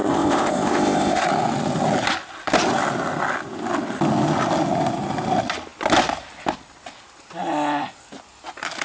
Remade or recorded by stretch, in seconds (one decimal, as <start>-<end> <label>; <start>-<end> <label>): 0.0-1.2 remade; 1.2-8.8 recorded